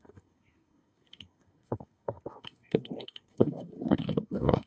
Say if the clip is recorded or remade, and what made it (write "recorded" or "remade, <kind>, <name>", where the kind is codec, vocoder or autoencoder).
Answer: remade, codec, SNAC